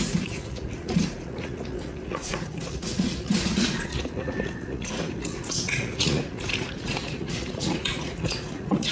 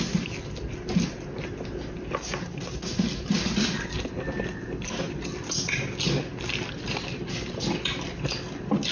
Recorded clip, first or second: second